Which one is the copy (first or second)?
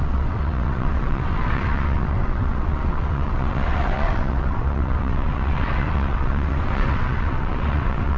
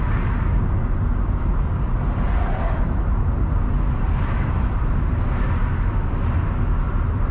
first